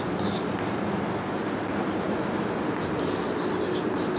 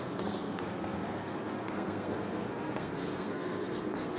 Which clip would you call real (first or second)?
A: first